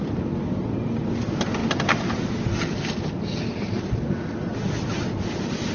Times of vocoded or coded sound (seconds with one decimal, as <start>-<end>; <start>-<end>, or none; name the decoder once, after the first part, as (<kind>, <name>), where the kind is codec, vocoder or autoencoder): none